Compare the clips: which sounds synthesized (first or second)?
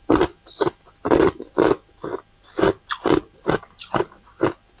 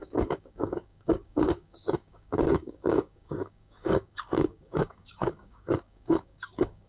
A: second